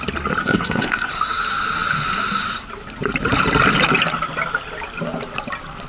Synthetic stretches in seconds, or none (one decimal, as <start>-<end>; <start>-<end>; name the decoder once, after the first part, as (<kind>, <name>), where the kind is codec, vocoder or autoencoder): 0.4-1.1 (codec, SNAC)